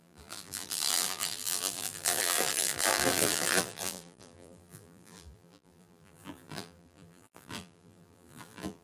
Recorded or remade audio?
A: remade